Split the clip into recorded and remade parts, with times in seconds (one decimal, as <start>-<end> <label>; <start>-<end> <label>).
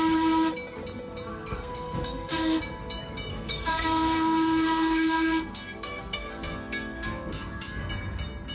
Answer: 0.0-1.3 recorded; 1.3-2.6 remade; 2.6-3.3 recorded; 3.3-7.9 remade; 7.9-8.5 recorded